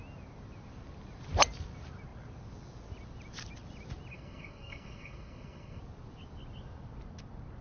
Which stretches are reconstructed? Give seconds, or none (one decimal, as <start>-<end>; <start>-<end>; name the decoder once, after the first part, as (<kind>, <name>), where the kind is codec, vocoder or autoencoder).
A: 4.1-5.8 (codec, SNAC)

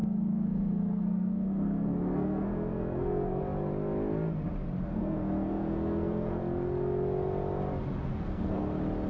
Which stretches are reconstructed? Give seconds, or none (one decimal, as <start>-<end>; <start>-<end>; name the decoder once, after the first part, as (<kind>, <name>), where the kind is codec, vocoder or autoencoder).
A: 0.0-3.4 (codec, SNAC); 4.9-6.4; 8.1-8.6

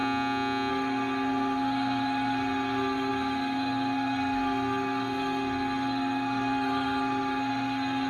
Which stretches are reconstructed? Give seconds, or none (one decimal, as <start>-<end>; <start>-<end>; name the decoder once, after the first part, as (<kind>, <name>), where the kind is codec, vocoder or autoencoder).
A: 0.7-8.1 (codec, SNAC)

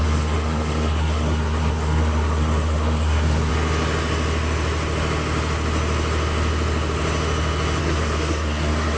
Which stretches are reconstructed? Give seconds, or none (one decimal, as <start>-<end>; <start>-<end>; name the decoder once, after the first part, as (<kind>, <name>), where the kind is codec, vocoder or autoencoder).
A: 0.0-3.5 (codec, SNAC); 7.8-9.0